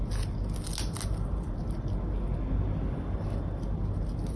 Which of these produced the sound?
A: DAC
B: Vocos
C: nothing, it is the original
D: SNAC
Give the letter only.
C